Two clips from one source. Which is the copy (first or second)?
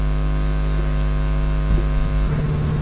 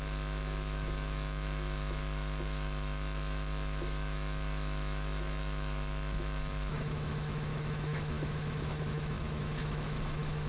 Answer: second